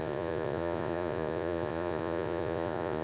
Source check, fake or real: fake